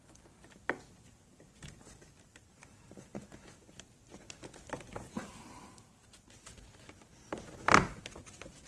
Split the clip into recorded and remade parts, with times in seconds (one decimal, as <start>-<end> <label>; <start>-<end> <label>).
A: 0.0-8.7 recorded